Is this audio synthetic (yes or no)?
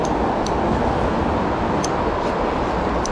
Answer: no